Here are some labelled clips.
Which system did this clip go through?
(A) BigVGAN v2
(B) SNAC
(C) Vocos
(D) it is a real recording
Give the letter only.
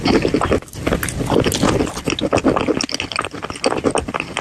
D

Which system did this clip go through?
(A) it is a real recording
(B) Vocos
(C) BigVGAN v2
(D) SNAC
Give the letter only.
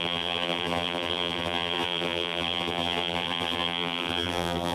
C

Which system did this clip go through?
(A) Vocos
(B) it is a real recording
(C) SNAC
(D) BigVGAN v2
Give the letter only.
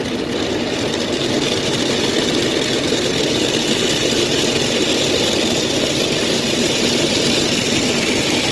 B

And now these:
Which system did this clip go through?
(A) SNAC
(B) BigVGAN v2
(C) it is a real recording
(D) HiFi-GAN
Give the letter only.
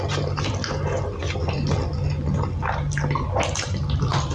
C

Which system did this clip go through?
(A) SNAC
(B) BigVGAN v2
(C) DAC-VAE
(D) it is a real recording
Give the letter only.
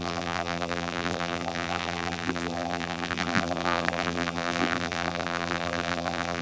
B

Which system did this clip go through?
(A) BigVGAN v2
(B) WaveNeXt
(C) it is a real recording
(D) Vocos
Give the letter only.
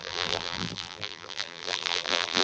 A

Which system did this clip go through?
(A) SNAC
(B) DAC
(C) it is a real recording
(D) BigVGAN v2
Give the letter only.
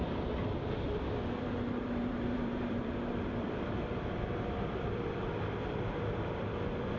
D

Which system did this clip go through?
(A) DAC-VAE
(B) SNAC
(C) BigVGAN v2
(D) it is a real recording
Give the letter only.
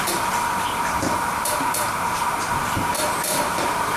C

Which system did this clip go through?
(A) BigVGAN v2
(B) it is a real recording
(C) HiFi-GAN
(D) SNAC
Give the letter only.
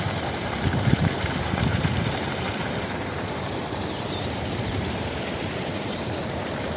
A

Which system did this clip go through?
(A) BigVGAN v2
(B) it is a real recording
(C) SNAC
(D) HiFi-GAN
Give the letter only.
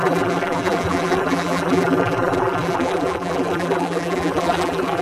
A